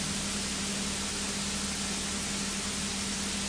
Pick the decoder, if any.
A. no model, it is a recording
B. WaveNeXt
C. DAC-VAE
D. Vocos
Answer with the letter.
A